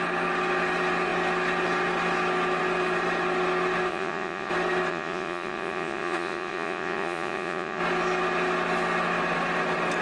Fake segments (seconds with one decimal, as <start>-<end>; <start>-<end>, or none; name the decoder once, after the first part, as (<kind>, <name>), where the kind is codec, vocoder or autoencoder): 3.9-4.5 (vocoder, Vocos); 4.9-7.8